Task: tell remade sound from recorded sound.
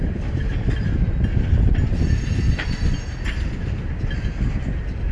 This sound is recorded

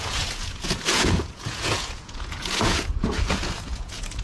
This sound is remade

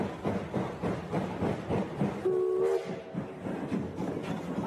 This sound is recorded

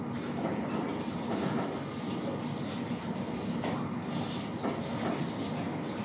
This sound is recorded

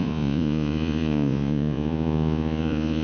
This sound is remade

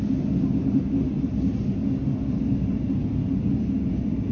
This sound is recorded